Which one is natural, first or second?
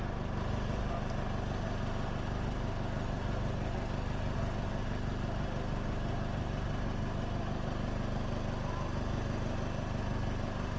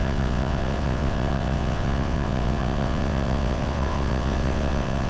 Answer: first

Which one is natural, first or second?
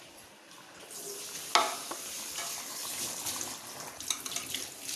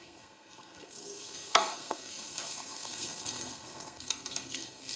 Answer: first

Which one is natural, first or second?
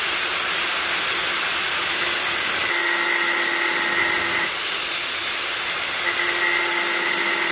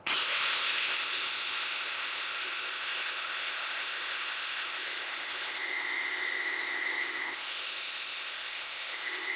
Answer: first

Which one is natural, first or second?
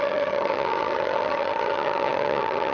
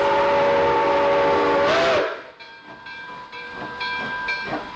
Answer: second